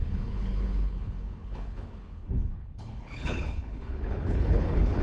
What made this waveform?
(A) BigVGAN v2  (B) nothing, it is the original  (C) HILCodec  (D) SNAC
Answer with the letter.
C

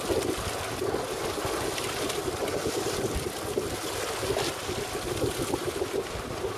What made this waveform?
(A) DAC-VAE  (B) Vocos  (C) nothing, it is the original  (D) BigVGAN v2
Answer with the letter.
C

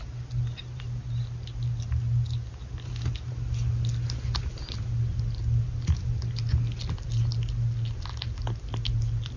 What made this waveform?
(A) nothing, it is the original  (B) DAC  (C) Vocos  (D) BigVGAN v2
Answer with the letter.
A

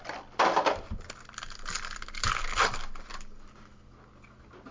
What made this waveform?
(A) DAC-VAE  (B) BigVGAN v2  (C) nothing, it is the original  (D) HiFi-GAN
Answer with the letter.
C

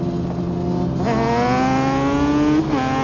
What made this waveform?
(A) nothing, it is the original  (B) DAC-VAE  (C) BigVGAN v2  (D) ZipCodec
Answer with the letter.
A